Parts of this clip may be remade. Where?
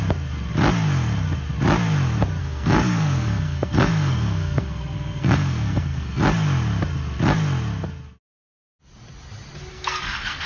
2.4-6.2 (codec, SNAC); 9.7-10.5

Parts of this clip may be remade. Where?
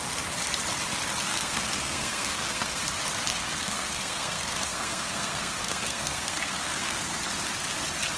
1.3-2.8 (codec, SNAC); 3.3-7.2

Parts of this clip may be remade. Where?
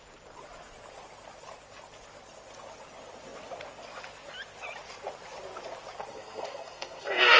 6.1-7.4 (codec, SNAC)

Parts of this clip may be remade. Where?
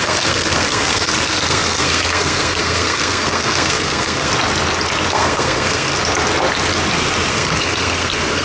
0.0-4.3 (codec, SNAC); 5.1-5.9; 7.3-8.4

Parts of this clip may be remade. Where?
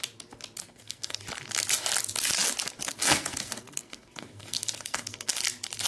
0.6-1.2 (codec, SNAC); 2.8-5.4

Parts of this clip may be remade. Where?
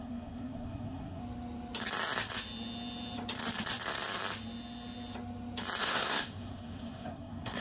0.0-1.2 (codec, SNAC); 5.8-7.6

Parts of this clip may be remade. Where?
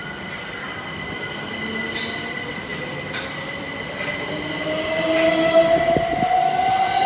none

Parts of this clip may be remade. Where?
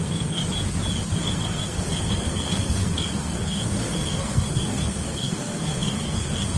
0.0-0.4 (codec, SNAC); 1.2-6.6